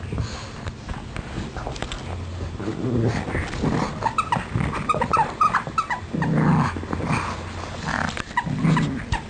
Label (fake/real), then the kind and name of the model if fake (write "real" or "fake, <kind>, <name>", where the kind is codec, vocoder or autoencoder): real